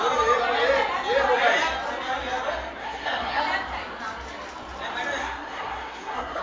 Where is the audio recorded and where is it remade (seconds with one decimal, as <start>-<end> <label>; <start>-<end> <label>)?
0.0-2.8 recorded; 2.8-3.4 remade; 3.4-5.2 recorded; 5.2-6.4 remade